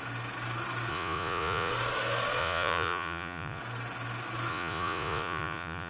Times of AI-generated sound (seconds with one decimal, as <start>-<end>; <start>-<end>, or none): 0.9-1.7; 2.4-3.6; 4.5-5.9